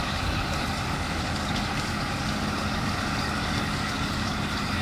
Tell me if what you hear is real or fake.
fake